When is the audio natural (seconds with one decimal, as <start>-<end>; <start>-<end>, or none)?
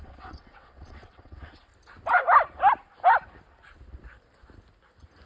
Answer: 1.7-5.3